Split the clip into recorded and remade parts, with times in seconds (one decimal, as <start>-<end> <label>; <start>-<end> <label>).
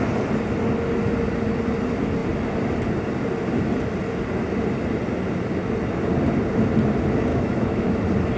0.0-7.3 recorded; 7.3-8.0 remade; 8.0-8.4 recorded